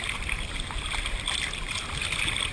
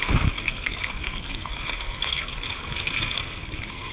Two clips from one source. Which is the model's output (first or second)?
second